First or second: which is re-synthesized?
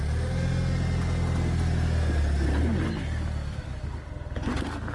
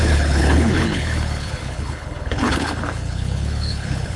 second